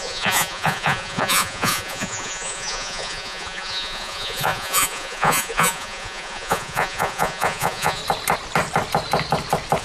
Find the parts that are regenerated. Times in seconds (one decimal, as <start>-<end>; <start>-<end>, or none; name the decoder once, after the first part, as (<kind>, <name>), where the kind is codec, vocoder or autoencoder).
0.0-8.0 (vocoder, Vocos)